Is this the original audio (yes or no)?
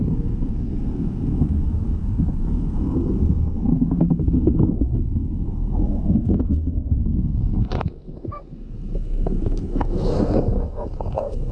no